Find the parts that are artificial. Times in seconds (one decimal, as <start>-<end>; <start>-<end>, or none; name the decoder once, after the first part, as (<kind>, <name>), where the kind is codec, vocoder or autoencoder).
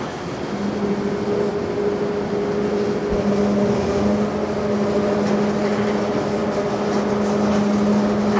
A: none